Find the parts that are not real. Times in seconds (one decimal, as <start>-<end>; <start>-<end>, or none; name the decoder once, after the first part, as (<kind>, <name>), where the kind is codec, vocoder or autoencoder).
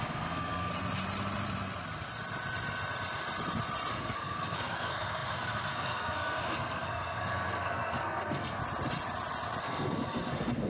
0.0-0.7 (codec, SNAC); 3.9-8.6; 9.6-10.7